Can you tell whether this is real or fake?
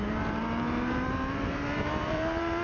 fake